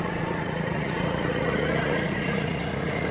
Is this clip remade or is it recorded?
remade